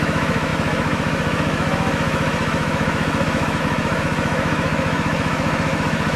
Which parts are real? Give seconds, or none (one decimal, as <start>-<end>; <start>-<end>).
none